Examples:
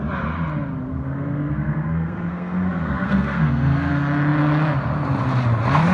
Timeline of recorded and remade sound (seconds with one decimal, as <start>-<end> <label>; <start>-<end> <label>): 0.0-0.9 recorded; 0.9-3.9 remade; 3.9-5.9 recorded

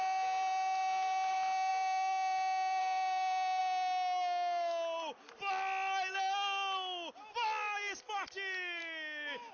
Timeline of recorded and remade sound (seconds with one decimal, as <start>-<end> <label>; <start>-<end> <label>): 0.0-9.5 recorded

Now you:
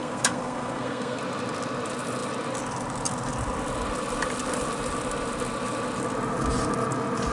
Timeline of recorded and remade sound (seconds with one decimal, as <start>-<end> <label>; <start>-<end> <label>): 0.0-1.2 remade; 1.2-7.3 recorded